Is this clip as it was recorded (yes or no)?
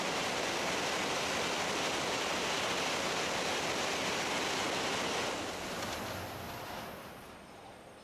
yes